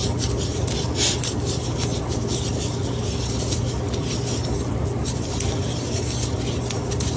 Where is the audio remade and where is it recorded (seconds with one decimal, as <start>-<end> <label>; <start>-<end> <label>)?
0.0-7.2 recorded